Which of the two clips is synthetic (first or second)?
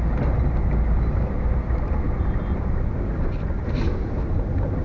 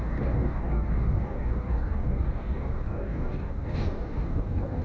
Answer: second